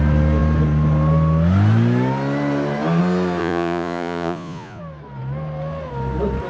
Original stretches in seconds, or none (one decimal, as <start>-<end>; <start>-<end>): 0.0-3.4; 4.8-6.5